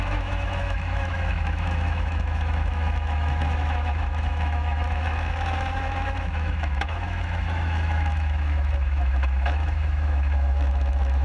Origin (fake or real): fake